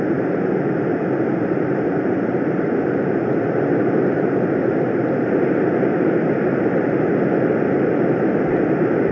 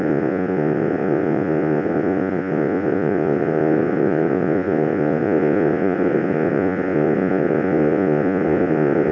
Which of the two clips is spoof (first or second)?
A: second